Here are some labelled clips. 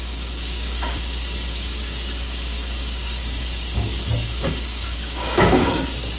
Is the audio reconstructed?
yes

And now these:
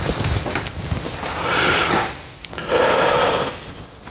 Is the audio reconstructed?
no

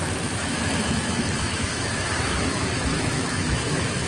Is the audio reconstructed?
yes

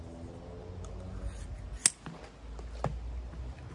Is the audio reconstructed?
no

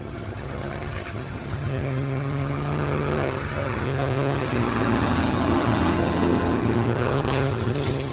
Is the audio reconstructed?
yes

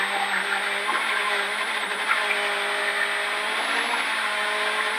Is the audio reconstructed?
no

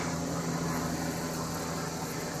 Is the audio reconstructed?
no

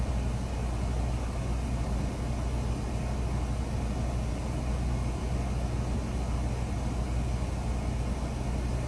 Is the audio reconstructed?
no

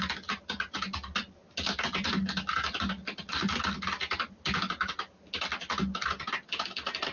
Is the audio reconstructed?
no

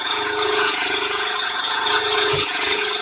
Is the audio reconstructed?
yes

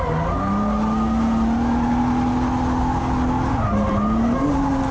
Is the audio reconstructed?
no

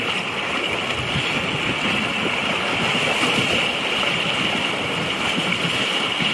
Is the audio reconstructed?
no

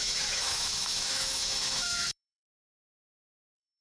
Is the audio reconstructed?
yes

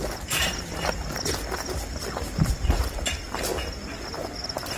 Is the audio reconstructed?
no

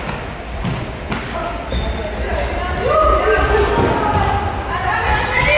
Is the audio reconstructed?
no